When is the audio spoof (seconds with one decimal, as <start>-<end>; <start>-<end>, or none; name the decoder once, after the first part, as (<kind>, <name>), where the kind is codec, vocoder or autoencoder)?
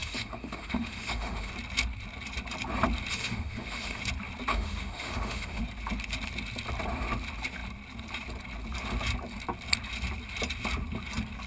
0.0-1.5 (autoencoder, DAC-VAE); 3.1-4.0; 4.5-5.6